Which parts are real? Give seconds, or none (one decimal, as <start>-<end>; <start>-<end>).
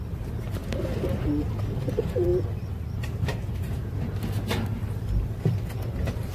0.0-6.3